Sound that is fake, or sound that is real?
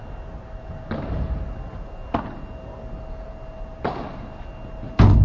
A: real